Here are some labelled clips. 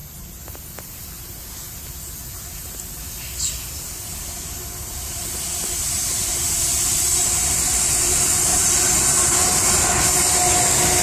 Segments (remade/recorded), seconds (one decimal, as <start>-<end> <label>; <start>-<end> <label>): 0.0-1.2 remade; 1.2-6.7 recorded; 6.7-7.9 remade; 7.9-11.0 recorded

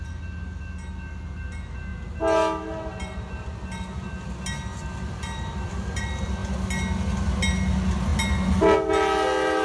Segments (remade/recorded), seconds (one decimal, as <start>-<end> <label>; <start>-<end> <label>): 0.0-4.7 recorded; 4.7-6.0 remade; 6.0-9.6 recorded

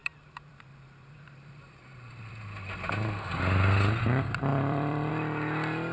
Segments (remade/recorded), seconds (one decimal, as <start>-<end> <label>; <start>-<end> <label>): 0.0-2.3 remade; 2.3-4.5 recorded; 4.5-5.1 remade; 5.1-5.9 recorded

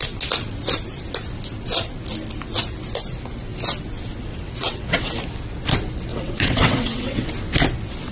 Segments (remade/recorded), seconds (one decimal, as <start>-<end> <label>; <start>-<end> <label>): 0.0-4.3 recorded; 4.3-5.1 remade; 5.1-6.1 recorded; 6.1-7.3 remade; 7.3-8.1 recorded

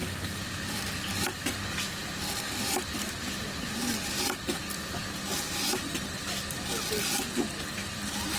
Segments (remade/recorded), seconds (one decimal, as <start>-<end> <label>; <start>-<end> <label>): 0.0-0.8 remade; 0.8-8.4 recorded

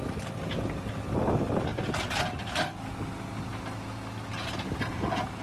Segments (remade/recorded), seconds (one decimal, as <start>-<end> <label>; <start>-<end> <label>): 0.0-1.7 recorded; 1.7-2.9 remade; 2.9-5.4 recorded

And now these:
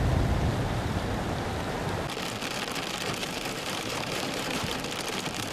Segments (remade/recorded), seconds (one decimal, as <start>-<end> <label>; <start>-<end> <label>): 0.0-3.2 recorded; 3.2-4.8 remade; 4.8-5.5 recorded